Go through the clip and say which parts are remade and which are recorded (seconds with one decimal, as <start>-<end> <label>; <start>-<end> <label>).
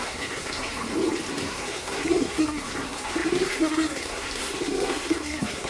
0.0-0.8 remade; 0.8-1.3 recorded; 1.3-5.7 remade